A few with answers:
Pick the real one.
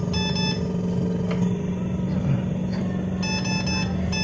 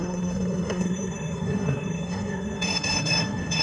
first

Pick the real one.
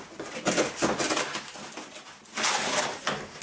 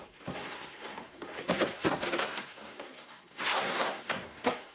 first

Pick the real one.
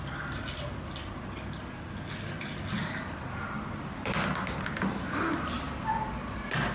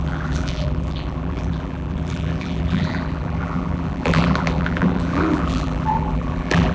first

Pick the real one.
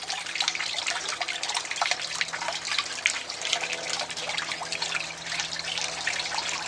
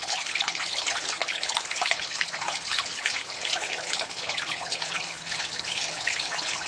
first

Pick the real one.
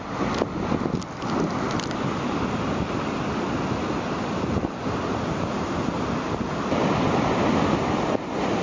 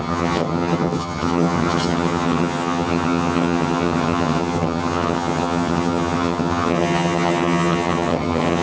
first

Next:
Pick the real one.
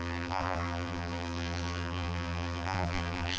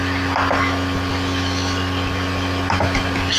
second